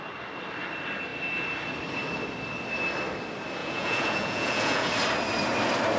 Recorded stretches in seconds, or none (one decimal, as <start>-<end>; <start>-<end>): 0.0-3.6; 4.9-6.0